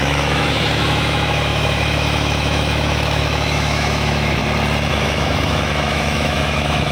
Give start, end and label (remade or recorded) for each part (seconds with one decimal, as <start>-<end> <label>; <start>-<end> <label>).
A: 0.0-4.4 remade; 4.4-4.9 recorded; 4.9-6.9 remade